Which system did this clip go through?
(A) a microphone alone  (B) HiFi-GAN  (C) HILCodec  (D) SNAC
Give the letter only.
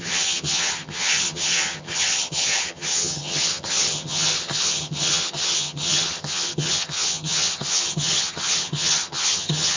B